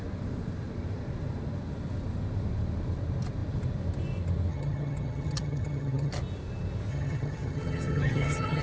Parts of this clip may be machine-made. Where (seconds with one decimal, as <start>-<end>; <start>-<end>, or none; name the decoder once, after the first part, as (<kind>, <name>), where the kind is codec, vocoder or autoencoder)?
4.5-6.1 (vocoder, HiFi-GAN); 6.9-8.6